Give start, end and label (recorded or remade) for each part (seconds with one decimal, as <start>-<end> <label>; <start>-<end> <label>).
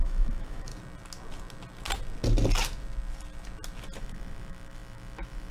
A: 0.0-0.7 remade; 0.7-4.0 recorded; 4.0-5.5 remade